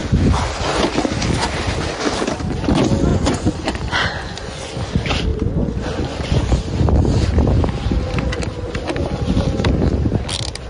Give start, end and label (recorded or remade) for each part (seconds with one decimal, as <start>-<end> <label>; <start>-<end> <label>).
0.0-3.1 recorded; 3.1-4.7 remade; 4.7-5.3 recorded; 5.3-6.5 remade; 6.5-10.7 recorded